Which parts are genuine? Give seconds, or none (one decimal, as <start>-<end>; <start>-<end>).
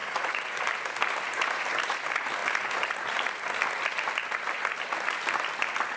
0.6-6.0